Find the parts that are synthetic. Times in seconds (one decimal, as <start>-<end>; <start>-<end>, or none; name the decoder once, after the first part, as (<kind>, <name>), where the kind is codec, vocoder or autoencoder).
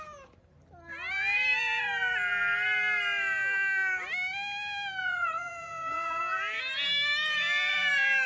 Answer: 5.0-6.2 (vocoder, Vocos)